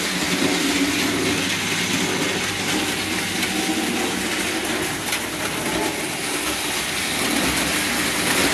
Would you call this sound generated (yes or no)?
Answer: no